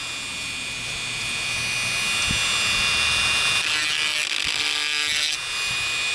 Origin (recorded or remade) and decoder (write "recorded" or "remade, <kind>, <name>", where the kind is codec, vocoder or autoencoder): recorded